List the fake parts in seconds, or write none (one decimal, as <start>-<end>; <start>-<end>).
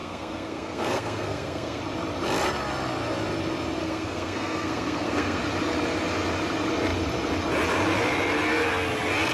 0.0-1.8; 3.8-5.4